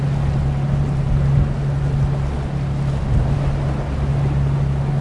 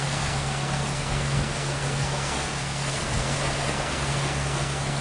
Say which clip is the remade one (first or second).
second